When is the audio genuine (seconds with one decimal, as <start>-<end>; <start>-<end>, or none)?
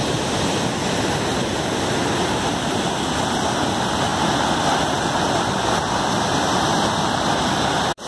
0.0-8.1